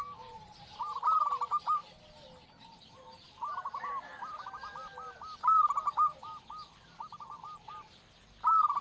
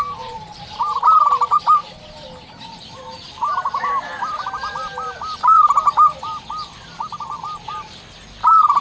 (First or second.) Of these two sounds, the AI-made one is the second